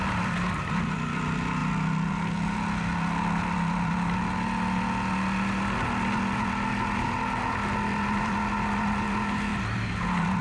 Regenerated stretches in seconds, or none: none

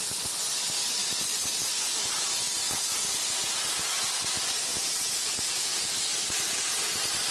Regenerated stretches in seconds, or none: 4.7-5.9

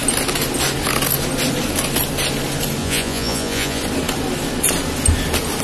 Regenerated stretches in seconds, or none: 2.8-3.8

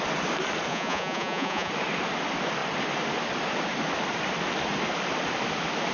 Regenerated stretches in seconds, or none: 0.7-1.7

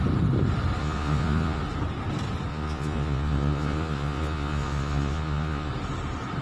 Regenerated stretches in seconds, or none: 0.8-1.6; 2.5-5.7